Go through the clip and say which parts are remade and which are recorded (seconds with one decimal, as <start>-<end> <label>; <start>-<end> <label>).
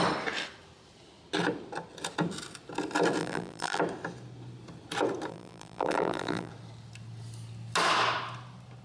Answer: 0.0-3.2 recorded; 3.2-3.8 remade; 3.8-5.3 recorded; 5.3-6.5 remade; 6.5-8.8 recorded